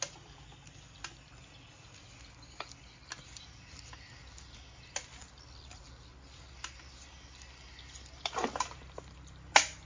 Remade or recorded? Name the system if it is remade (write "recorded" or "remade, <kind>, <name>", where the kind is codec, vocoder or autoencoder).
recorded